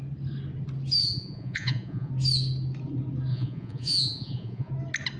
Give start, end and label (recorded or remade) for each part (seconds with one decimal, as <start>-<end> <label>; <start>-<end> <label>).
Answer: 0.0-1.0 recorded; 1.0-2.1 remade; 2.1-3.3 recorded; 3.3-4.7 remade; 4.7-5.2 recorded